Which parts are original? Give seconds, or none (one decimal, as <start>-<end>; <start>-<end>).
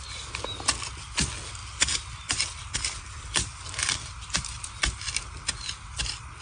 0.0-1.6; 4.8-6.4